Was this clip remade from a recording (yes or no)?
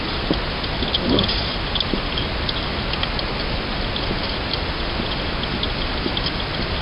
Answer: no